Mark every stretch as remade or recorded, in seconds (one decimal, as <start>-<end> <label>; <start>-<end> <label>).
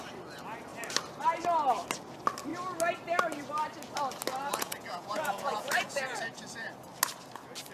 0.0-4.5 recorded; 4.5-6.2 remade; 6.2-7.7 recorded